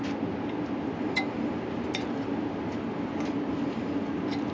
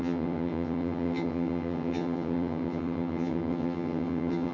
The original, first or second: first